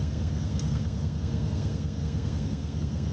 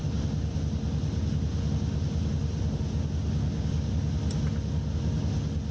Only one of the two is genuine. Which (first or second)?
second